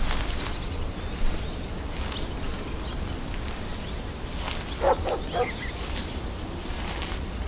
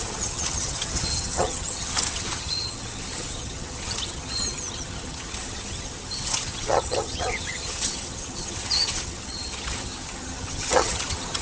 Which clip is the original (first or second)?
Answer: first